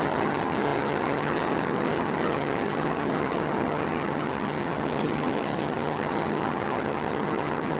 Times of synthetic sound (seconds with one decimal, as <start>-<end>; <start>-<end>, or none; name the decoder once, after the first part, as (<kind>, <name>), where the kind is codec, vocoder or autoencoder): 0.0-7.8 (vocoder, HiFi-GAN)